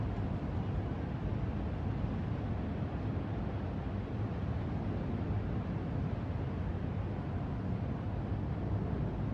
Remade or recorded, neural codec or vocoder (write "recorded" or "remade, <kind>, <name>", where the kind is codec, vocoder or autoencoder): recorded